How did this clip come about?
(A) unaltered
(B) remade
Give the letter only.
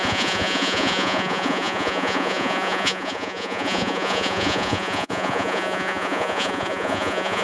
B